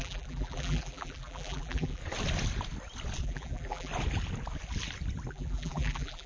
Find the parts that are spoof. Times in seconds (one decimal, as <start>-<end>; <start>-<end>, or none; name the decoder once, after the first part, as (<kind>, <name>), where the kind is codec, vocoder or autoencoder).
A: 0.0-2.0 (vocoder, BigVGAN v2); 3.2-3.9; 5.3-6.3